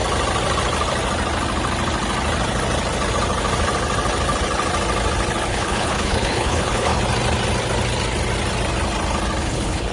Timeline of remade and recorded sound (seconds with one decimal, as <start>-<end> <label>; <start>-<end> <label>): 0.0-5.5 recorded; 5.5-7.0 remade; 7.0-9.4 recorded; 9.4-9.9 remade